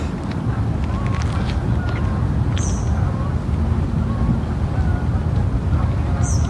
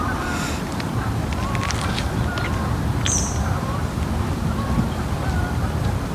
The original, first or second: first